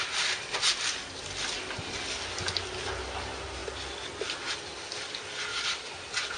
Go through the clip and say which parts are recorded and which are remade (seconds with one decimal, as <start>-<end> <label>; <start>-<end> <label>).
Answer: 0.0-5.5 recorded; 5.5-6.4 remade